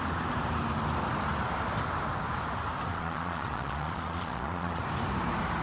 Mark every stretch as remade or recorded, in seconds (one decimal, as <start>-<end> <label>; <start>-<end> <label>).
0.0-2.9 recorded; 2.9-4.8 remade; 4.8-5.6 recorded